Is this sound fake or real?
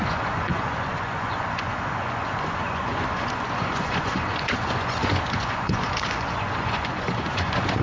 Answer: fake